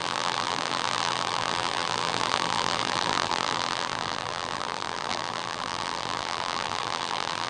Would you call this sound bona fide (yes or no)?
no